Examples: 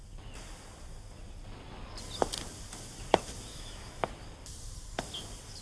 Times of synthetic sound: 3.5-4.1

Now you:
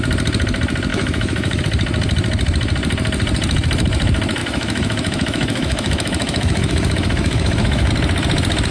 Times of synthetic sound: 0.9-1.6; 4.4-7.9

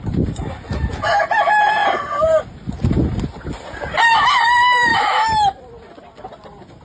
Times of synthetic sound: 4.9-5.6

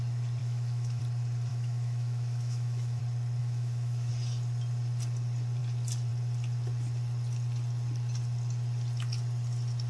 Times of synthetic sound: 0.4-1.0; 1.5-3.0; 3.4-4.1

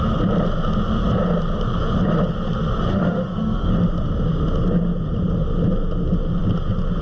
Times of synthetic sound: 2.9-3.7

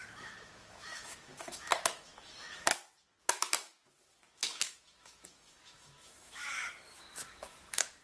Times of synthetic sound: 0.0-8.0